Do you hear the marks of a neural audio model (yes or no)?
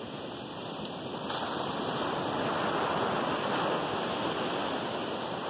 no